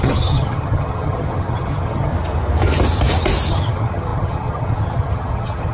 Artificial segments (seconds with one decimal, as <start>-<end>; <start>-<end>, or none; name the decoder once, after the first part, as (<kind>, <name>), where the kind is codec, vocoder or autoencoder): 0.0-2.1 (vocoder, HiFi-GAN); 3.5-5.7